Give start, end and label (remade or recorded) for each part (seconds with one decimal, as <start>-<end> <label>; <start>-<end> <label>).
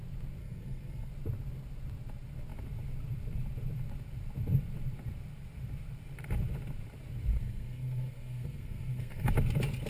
0.0-0.4 recorded; 0.4-1.1 remade; 1.1-7.3 recorded; 7.3-9.3 remade; 9.3-9.9 recorded